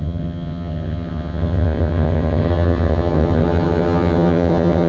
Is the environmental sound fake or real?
fake